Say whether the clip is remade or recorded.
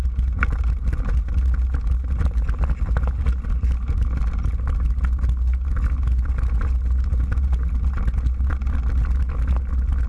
recorded